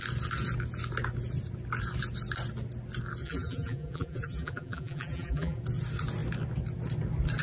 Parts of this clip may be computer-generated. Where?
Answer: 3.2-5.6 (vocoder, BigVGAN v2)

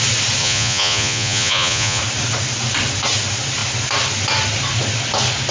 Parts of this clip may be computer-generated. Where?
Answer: 0.4-2.0 (vocoder, Vocos)